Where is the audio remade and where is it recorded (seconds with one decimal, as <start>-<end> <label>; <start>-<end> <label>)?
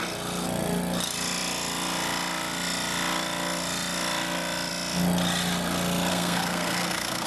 0.0-6.1 recorded; 6.1-7.3 remade